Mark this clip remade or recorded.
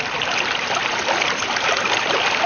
recorded